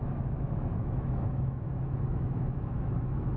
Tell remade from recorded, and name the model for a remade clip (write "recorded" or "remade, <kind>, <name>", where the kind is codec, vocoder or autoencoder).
remade, autoencoder, DAC-VAE